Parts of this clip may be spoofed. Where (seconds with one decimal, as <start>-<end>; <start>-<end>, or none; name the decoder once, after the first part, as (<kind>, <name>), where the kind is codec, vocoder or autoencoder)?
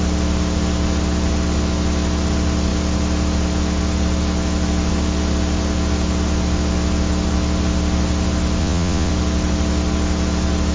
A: 8.6-9.1 (vocoder, Vocos)